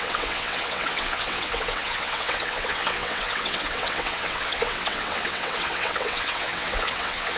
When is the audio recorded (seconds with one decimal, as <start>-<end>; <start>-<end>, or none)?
none